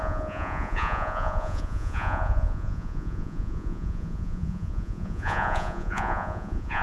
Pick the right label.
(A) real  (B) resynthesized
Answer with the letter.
B